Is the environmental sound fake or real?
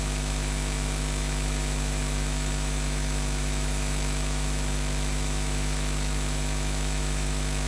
fake